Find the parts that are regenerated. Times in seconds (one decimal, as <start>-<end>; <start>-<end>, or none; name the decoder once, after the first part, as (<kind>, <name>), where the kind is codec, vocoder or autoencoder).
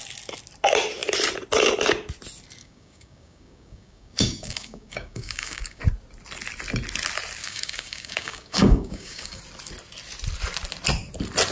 2.6-5.8 (codec, DAC); 7.4-9.4